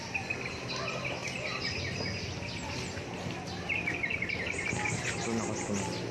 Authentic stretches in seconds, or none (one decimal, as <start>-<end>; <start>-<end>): 0.0-6.1